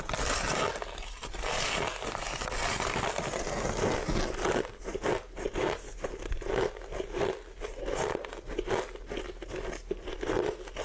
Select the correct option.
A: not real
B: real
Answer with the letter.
B